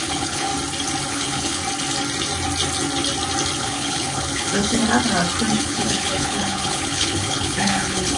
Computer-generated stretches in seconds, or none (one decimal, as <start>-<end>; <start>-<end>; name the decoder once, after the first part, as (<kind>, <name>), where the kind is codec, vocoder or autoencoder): 0.0-0.5 (codec, HILCodec); 1.1-1.6; 3.6-4.8; 5.6-8.2